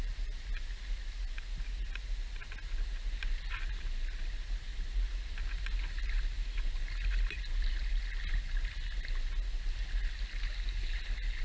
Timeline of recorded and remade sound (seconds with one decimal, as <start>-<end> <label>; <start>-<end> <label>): 0.0-11.4 recorded